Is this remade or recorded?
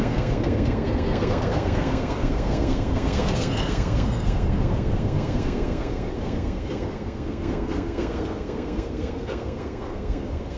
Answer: remade